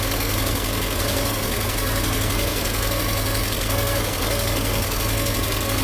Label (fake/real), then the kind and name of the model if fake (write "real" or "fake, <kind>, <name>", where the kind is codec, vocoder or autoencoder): fake, codec, SNAC